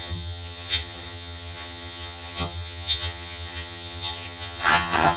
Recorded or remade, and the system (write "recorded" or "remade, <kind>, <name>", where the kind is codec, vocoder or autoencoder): remade, vocoder, HiFi-GAN